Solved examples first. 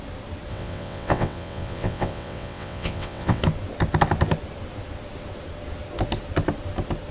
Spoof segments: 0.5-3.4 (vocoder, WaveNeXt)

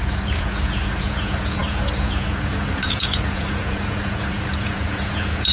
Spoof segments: 0.0-5.5 (vocoder, Vocos)

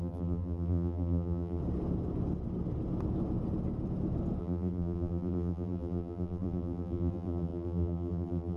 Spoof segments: 0.0-1.6 (vocoder, BigVGAN v2); 4.4-8.6

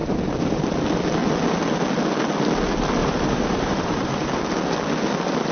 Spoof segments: 0.0-0.6 (vocoder, BigVGAN v2); 3.0-4.4

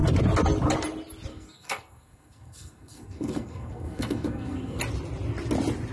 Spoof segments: 1.3-4.8 (codec, SNAC)

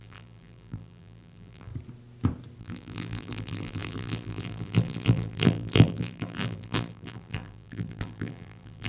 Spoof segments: 0.0-1.7 (vocoder, BigVGAN v2); 2.6-8.9